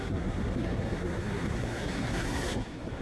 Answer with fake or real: fake